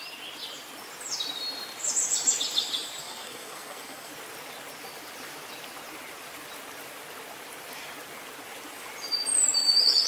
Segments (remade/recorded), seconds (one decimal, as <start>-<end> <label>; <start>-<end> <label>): 0.0-3.0 recorded; 3.0-4.1 remade; 4.1-10.1 recorded